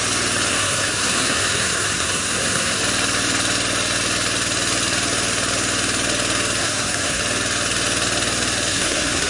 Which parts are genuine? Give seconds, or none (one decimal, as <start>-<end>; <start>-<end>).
0.0-0.5; 2.8-6.6; 7.2-8.7